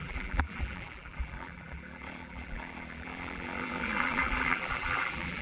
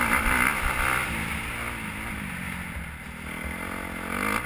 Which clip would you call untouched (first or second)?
second